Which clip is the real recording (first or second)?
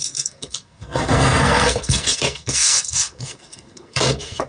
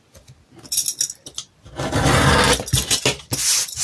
second